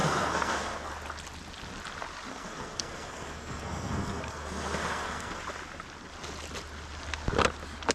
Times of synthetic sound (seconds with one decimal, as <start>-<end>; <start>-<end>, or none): 0.0-0.9; 2.3-5.4